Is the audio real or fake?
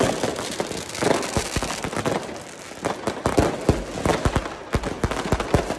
real